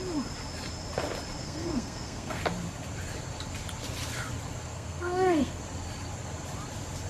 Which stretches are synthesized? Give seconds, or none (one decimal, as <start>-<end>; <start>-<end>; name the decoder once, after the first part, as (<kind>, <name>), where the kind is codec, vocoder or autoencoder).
1.4-2.4 (codec, SNAC); 4.7-5.6